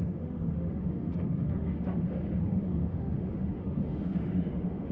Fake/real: fake